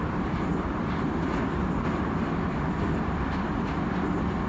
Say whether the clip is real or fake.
real